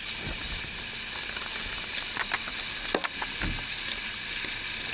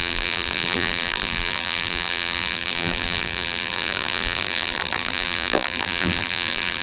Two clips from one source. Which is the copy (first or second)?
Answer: second